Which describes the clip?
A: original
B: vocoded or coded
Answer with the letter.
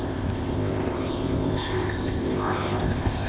B